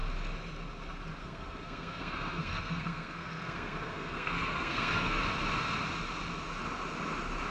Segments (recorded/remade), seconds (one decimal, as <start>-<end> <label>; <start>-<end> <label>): 0.0-1.2 recorded; 1.2-5.2 remade; 5.2-7.5 recorded